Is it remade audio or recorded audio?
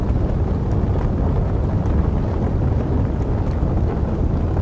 recorded